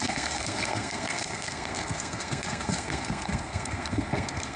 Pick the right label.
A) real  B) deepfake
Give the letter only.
B